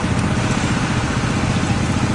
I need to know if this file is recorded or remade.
recorded